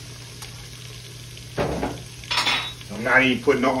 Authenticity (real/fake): real